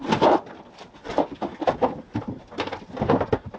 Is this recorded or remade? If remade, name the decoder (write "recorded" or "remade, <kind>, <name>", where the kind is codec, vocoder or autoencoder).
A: recorded